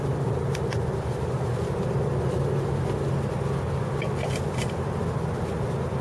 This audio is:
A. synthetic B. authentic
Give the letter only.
B